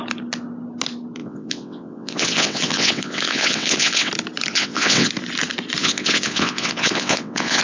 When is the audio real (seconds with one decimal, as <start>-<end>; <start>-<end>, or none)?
0.0-1.2; 4.1-4.5; 5.1-5.8